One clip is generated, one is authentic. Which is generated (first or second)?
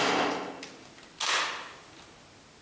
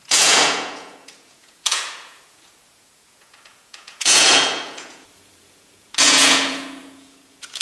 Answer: second